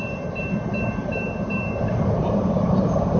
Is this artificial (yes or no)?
no